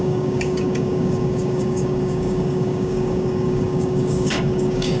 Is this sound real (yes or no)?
no